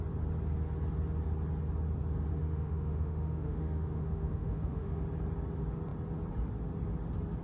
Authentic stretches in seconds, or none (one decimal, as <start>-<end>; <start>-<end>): 0.0-2.4; 5.0-7.4